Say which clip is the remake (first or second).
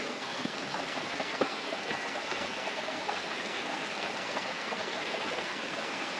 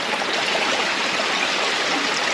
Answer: first